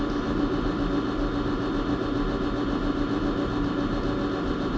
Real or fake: real